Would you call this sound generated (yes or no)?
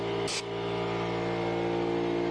no